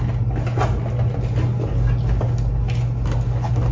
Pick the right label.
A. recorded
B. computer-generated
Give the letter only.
A